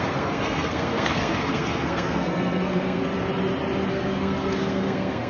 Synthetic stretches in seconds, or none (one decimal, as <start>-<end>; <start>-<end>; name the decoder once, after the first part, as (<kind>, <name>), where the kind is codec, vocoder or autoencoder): 0.0-3.1 (codec, SNAC); 3.9-5.3